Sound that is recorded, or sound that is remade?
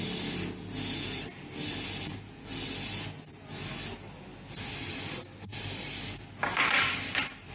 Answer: recorded